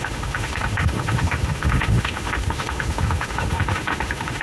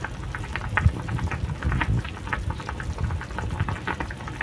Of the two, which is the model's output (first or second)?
first